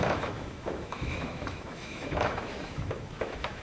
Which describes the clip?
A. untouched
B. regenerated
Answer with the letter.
B